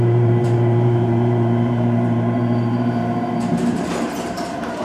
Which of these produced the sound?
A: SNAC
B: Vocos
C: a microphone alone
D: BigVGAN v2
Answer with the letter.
D